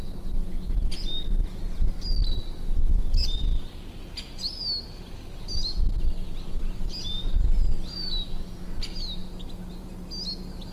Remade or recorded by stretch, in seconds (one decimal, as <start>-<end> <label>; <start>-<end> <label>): 0.0-10.7 recorded